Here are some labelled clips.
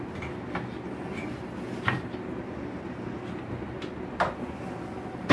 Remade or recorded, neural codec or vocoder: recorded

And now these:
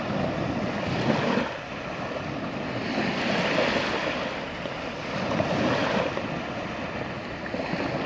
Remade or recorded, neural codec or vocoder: recorded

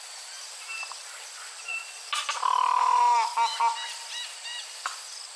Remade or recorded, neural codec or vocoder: recorded